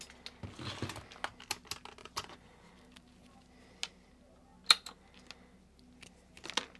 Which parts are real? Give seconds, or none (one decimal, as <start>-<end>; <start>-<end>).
0.0-2.0; 2.7-6.8